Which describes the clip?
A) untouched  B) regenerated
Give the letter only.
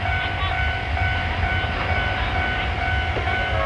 A